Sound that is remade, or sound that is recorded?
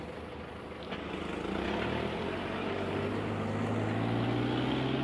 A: recorded